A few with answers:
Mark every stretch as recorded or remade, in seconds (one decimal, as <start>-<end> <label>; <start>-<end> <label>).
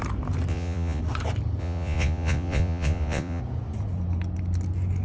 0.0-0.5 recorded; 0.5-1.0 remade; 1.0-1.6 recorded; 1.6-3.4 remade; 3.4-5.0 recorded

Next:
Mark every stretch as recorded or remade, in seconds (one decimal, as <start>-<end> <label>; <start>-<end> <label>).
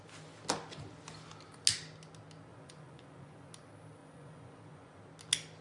0.0-2.5 recorded; 2.5-3.5 remade; 3.5-4.0 recorded; 4.0-5.0 remade; 5.0-5.6 recorded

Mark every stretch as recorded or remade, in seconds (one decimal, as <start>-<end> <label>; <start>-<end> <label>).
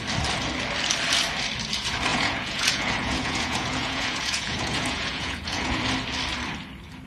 0.0-2.1 recorded; 2.1-5.8 remade; 5.8-7.1 recorded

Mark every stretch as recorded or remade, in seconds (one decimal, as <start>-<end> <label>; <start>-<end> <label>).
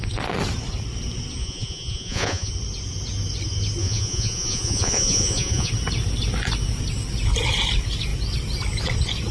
0.0-1.4 recorded; 1.4-2.5 remade; 2.5-3.8 recorded; 3.8-5.7 remade; 5.7-9.3 recorded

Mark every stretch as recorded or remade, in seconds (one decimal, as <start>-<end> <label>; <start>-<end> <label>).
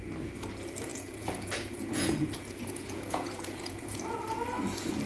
0.0-0.9 recorded; 0.9-4.0 remade; 4.0-5.1 recorded